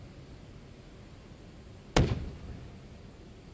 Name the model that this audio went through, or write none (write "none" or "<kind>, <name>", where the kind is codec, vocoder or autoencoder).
none